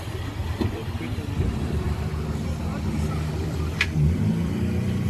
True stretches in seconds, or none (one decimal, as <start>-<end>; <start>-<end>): 0.4-1.0